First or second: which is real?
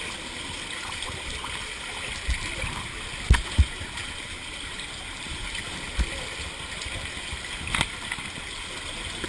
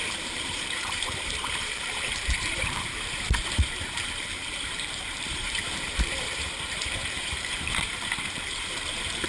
first